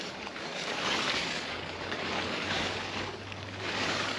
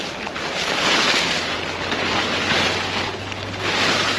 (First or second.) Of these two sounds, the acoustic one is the second